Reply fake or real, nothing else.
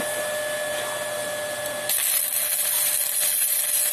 real